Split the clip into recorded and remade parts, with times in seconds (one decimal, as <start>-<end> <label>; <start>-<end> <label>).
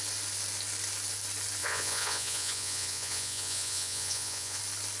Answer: 0.0-1.6 recorded; 1.6-4.6 remade; 4.6-5.0 recorded